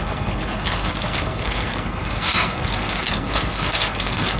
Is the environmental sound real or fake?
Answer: fake